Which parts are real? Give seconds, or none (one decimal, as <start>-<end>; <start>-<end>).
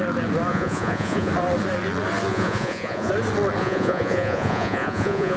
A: 0.0-0.5; 1.3-2.3; 3.1-3.6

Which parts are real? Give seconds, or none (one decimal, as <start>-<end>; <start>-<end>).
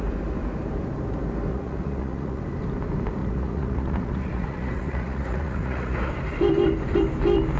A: 0.0-1.5; 2.4-3.2; 6.1-7.6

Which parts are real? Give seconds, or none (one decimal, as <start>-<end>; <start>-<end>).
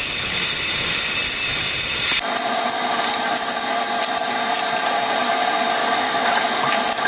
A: 1.2-4.8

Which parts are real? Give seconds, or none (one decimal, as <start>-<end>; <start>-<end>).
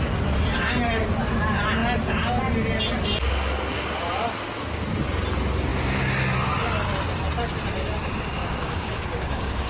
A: 0.0-8.0